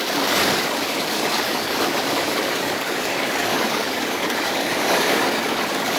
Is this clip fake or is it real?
fake